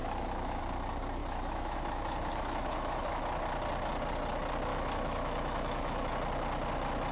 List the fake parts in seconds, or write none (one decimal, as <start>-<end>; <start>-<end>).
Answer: 0.0-0.6; 1.2-3.2; 4.7-6.1